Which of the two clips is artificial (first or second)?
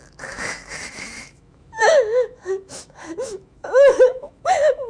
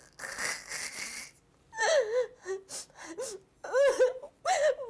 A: first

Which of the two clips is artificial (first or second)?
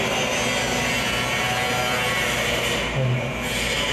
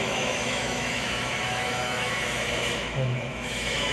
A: second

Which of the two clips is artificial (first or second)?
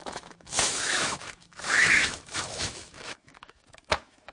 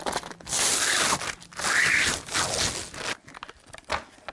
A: first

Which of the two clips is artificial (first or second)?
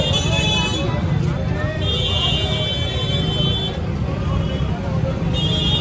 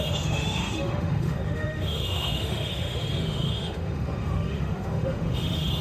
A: second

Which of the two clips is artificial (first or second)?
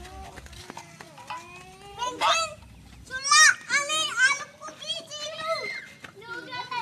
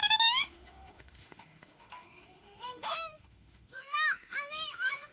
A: second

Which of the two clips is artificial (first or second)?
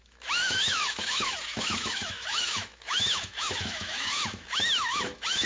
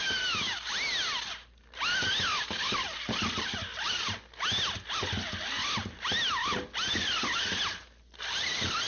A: first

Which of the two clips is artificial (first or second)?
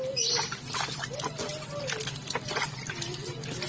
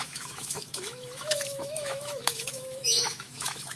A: second